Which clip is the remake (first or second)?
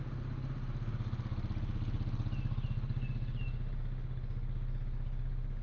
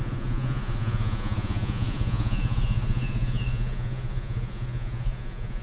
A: second